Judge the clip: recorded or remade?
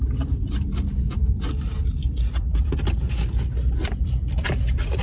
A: recorded